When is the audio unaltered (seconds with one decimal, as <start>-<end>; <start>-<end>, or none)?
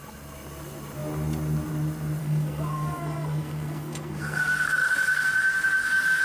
0.0-2.2